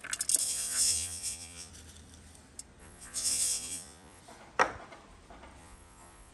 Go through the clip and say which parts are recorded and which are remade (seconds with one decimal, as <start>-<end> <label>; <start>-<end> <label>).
0.0-0.4 recorded; 0.4-1.7 remade; 1.7-2.8 recorded; 2.8-4.2 remade; 4.2-5.6 recorded; 5.6-6.3 remade